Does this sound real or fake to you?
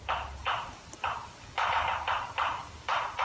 real